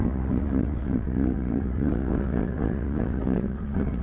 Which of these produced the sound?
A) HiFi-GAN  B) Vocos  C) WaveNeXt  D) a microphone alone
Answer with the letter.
C